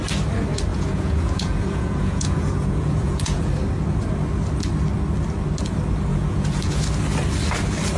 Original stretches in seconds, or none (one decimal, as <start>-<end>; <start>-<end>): 0.0-0.7; 3.5-6.1; 6.8-8.0